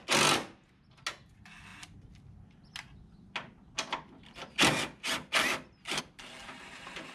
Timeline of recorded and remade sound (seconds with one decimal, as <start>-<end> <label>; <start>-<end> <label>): 0.0-6.4 recorded; 6.4-7.1 remade